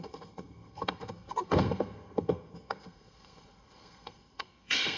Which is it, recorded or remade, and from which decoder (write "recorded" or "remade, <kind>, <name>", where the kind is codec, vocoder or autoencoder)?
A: remade, codec, SNAC